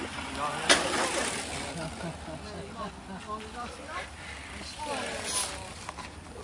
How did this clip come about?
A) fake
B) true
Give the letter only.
B